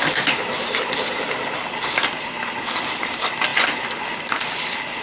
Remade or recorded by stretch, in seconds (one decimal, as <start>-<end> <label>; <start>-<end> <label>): 0.0-5.0 recorded